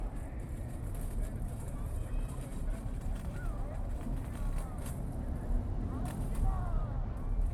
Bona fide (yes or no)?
no